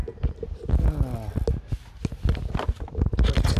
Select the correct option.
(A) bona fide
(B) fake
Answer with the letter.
A